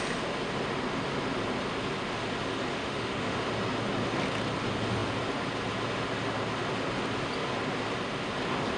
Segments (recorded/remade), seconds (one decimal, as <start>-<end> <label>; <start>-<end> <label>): 0.0-2.7 recorded; 2.7-3.4 remade; 3.4-8.8 recorded